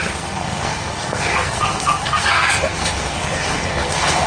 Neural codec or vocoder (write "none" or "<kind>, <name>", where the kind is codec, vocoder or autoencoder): codec, SNAC